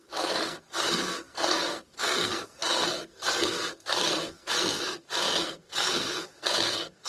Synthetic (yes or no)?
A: yes